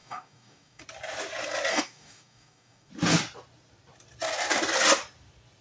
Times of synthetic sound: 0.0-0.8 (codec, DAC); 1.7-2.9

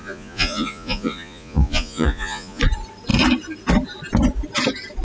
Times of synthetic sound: 0.0-2.6 (vocoder, Vocos)

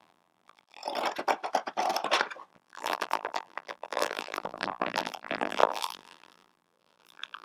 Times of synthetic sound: 0.0-0.8 (vocoder, BigVGAN v2); 2.5-7.4

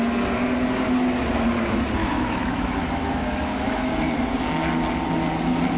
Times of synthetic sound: 2.0-4.0 (autoencoder, DAC-VAE)

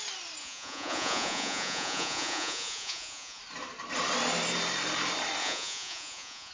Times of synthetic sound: 0.4-3.4 (vocoder, Vocos); 5.4-6.5

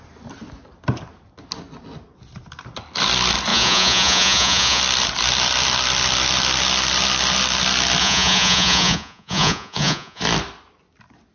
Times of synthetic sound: 3.5-4.8 (vocoder, Vocos); 8.0-10.2

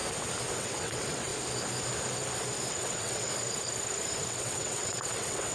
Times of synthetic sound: 0.5-1.3 (vocoder, WaveNeXt); 2.7-3.3; 4.3-5.5

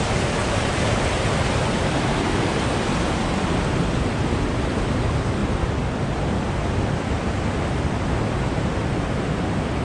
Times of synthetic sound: 0.4-2.8 (vocoder, BigVGAN v2)